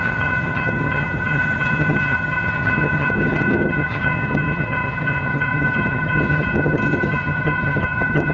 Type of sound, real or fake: fake